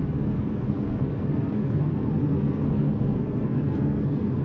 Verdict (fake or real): fake